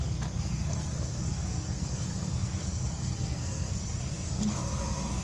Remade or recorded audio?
remade